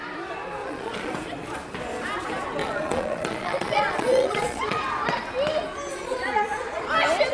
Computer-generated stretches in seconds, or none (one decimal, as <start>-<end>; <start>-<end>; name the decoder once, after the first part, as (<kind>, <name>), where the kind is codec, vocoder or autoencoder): 0.6-1.1 (vocoder, Vocos); 2.6-4.8; 5.9-6.8